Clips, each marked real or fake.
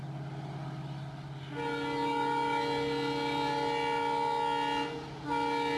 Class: real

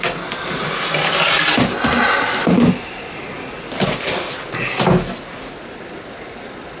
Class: real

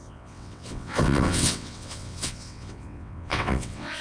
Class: fake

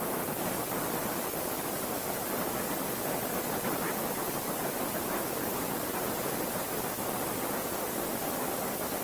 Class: real